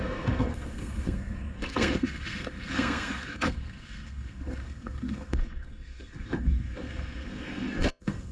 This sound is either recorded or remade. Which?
remade